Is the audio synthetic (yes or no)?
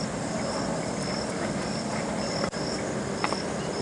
no